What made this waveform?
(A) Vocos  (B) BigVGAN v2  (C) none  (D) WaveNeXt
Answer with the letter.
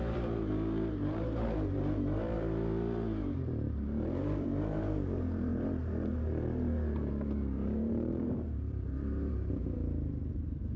B